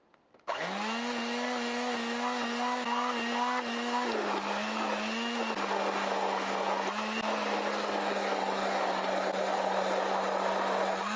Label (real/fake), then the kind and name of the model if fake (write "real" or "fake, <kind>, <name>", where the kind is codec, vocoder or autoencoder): real